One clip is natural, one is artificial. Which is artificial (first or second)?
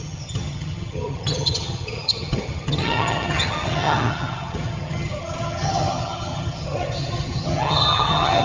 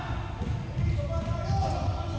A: first